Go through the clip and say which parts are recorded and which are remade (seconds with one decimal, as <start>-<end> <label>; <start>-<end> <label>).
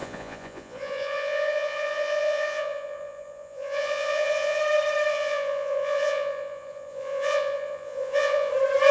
0.0-4.6 remade; 4.6-5.1 recorded; 5.1-8.5 remade; 8.5-8.9 recorded